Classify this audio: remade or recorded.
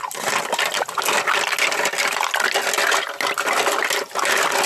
recorded